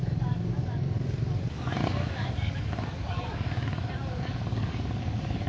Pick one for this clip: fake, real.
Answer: fake